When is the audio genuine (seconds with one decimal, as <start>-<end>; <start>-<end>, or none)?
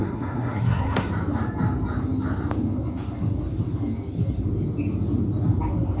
1.1-6.0